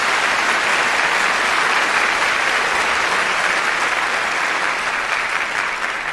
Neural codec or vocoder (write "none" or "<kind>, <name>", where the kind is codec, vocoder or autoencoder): none